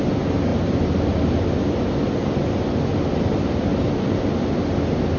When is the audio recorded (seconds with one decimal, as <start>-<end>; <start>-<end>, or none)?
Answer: 0.0-0.5; 1.2-5.2